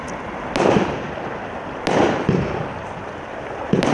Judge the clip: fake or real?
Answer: real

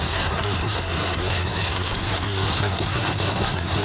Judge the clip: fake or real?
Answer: fake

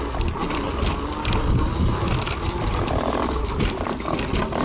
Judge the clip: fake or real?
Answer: real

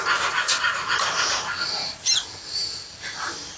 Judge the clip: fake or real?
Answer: real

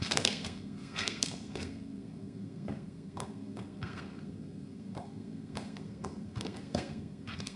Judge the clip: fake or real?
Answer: fake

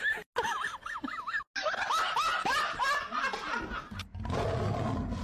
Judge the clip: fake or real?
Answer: real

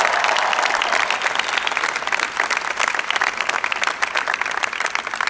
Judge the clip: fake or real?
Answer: real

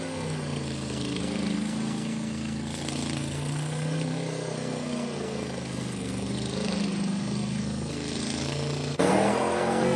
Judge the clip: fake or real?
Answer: fake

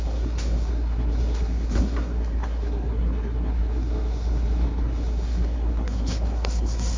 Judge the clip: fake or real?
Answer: fake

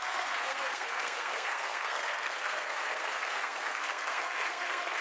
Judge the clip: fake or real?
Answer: fake